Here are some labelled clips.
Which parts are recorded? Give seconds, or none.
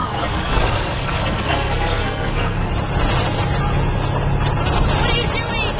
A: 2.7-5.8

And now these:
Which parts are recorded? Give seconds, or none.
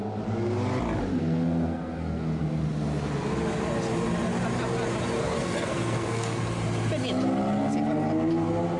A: 0.0-1.2; 2.4-5.2; 6.4-8.8